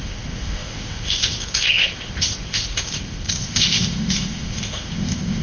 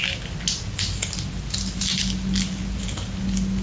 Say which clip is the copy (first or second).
first